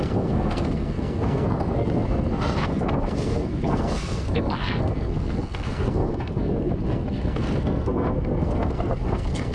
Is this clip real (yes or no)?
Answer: no